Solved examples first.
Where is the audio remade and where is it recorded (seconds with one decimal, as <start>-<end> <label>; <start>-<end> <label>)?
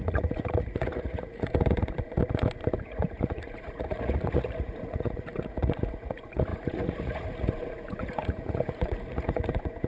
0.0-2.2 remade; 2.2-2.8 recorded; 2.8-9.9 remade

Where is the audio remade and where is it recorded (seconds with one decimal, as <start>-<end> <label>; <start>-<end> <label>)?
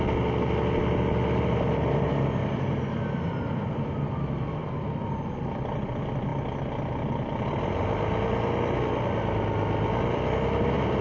0.0-11.0 recorded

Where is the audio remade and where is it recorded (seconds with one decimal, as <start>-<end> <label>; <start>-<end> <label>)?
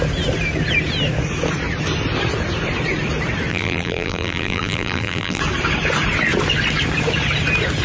0.0-3.5 recorded; 3.5-5.4 remade; 5.4-7.8 recorded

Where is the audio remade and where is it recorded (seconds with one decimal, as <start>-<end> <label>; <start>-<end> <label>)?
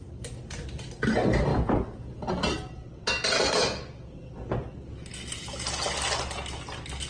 0.0-1.5 recorded; 1.5-2.2 remade; 2.2-7.1 recorded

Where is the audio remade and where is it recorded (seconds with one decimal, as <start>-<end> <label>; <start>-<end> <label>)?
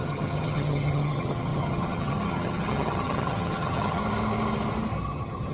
0.0-4.0 remade; 4.0-4.9 recorded; 4.9-5.5 remade